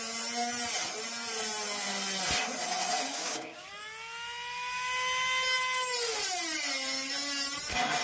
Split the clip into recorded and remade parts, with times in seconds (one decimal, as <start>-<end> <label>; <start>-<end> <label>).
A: 0.0-3.1 recorded; 3.1-3.7 remade; 3.7-8.0 recorded